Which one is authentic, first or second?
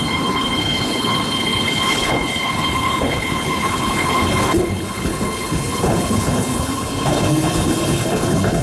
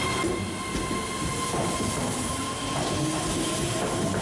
second